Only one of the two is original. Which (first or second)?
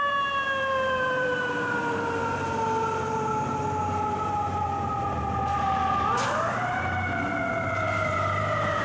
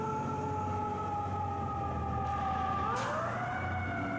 second